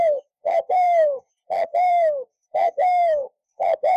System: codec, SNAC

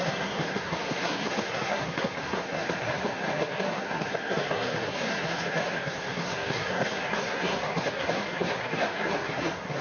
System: codec, SNAC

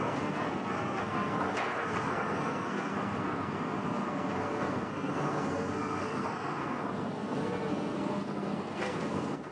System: codec, SNAC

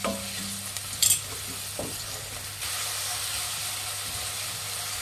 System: none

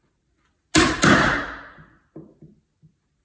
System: none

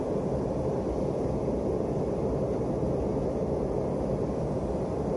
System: none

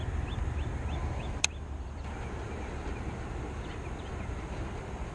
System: none